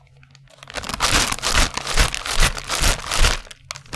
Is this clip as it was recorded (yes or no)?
yes